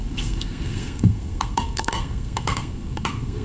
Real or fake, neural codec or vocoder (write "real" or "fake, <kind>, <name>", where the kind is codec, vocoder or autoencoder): fake, codec, SNAC